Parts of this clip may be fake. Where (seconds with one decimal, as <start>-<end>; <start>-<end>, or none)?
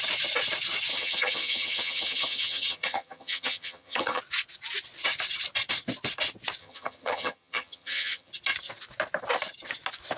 0.9-4.2; 6.6-8.3